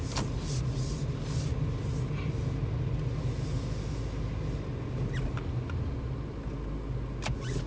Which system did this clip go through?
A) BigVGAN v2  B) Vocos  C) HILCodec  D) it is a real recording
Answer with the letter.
D